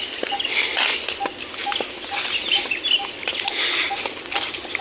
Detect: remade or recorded recorded